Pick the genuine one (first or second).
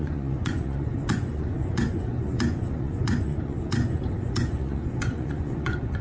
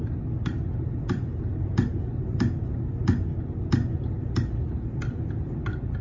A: second